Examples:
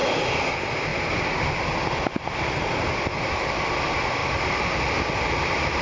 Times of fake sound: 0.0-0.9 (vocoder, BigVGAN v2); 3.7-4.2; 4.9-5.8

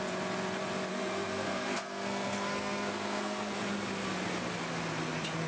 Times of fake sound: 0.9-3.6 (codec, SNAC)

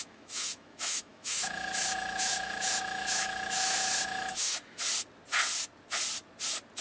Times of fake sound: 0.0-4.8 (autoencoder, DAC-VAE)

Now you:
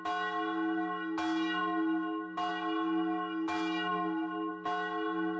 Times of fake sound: none

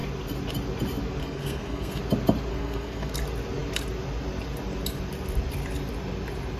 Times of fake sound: 1.2-2.0 (codec, SNAC); 2.5-3.1

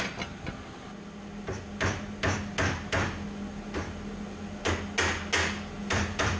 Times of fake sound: 5.8-6.4 (vocoder, BigVGAN v2)